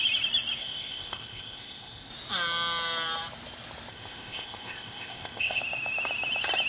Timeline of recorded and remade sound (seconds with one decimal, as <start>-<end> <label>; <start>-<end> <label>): 0.0-0.6 recorded; 0.6-2.1 remade; 2.1-3.9 recorded; 3.9-5.6 remade; 5.6-6.7 recorded

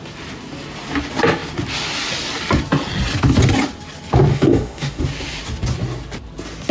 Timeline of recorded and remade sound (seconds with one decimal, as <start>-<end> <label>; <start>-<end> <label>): 0.0-4.3 recorded; 4.3-5.0 remade; 5.0-6.7 recorded

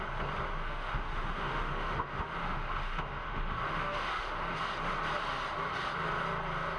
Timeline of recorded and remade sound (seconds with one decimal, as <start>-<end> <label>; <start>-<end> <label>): 0.0-0.6 recorded; 0.6-4.7 remade; 4.7-6.8 recorded

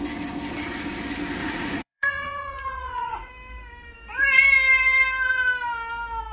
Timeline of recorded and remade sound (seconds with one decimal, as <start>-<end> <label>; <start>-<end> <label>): 0.0-1.4 recorded; 1.4-3.3 remade; 3.3-6.3 recorded

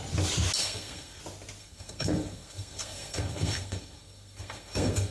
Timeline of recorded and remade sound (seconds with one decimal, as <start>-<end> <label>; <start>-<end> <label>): 0.0-0.6 recorded; 0.6-1.2 remade; 1.2-1.6 recorded; 1.6-5.1 remade

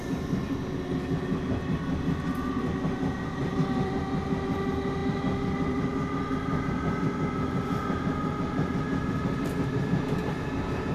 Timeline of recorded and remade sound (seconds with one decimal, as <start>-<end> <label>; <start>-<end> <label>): 0.0-3.4 recorded; 3.4-4.0 remade; 4.0-10.9 recorded